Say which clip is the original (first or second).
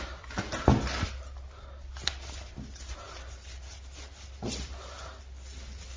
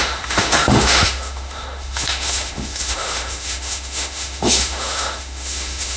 first